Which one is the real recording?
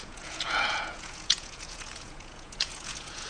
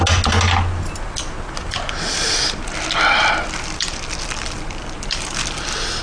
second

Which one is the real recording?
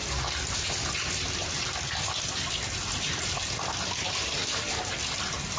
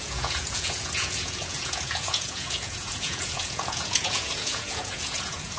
first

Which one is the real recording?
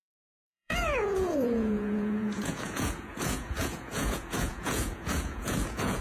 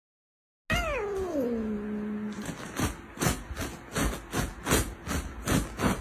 second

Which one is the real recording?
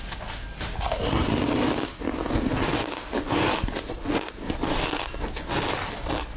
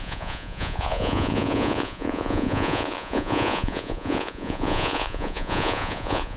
first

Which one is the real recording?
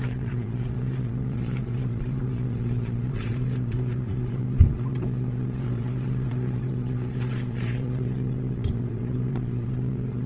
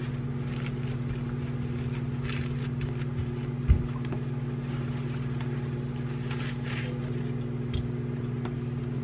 second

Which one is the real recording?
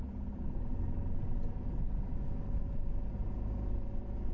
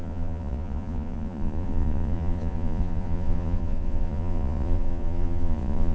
first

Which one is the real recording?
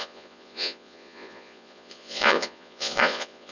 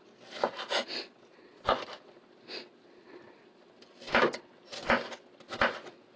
second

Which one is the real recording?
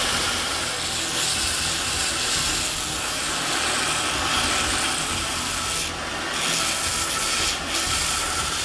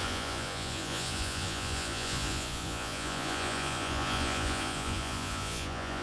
first